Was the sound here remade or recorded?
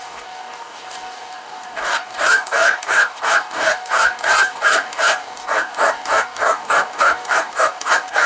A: remade